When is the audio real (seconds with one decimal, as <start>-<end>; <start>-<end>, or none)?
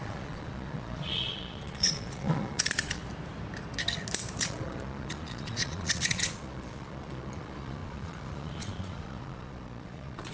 3.0-4.4